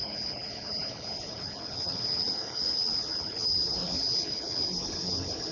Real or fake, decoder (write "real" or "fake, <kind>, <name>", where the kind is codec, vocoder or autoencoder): fake, codec, HILCodec